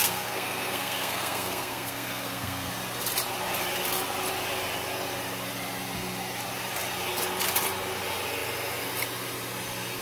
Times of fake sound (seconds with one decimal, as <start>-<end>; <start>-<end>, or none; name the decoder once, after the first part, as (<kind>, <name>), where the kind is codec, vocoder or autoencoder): 0.0-2.7 (codec, SNAC)